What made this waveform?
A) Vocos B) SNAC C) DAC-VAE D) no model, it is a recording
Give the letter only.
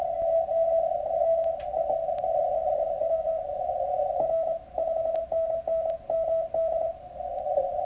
D